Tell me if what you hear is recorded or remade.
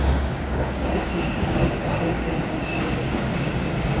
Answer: remade